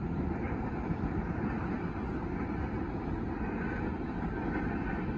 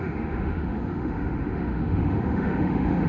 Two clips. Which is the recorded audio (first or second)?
first